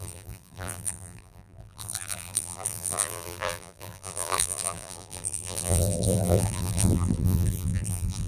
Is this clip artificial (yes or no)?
yes